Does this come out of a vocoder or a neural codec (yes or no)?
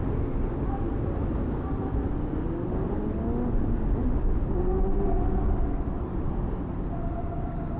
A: no